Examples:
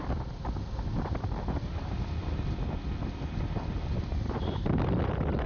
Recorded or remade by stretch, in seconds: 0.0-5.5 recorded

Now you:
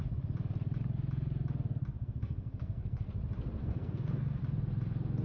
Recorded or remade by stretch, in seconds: 0.0-2.0 recorded; 2.0-3.1 remade; 3.1-3.6 recorded; 3.6-4.4 remade; 4.4-5.2 recorded

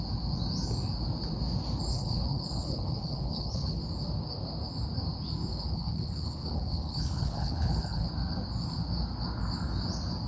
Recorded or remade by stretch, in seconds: 0.0-1.9 recorded; 1.9-3.8 remade; 3.8-5.5 recorded; 5.5-8.1 remade; 8.1-10.3 recorded

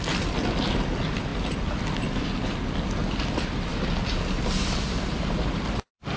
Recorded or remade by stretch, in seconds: 0.0-6.2 recorded

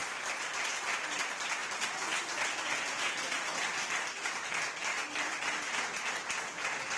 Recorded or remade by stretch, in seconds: 0.0-7.0 recorded

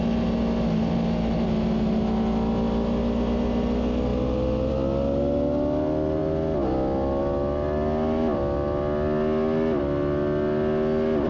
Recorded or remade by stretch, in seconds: 0.0-11.3 recorded